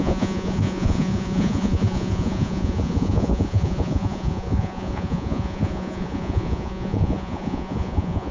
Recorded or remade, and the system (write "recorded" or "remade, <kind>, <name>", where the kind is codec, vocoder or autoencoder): remade, vocoder, Vocos